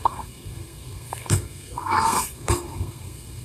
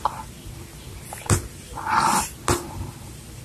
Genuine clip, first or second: second